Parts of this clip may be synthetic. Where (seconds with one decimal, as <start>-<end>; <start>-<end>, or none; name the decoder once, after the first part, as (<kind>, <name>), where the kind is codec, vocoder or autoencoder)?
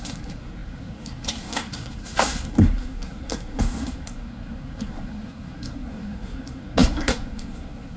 0.0-8.0 (codec, SNAC)